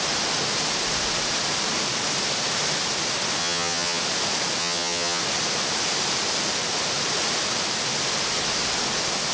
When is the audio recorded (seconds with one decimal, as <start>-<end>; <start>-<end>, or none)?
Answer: 0.0-3.4; 4.0-4.6; 5.2-9.3